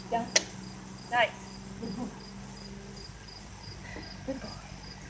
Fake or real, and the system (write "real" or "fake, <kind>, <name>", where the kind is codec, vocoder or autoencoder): real